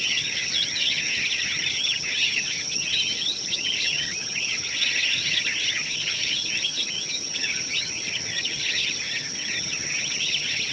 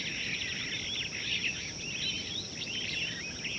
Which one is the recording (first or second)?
second